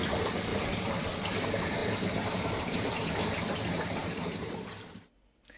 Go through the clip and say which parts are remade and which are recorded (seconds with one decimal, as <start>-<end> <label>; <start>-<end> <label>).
0.0-0.5 recorded; 0.5-1.1 remade; 1.1-1.8 recorded; 1.8-3.0 remade; 3.0-4.0 recorded; 4.0-5.0 remade; 5.0-5.6 recorded